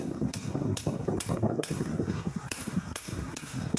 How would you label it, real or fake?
fake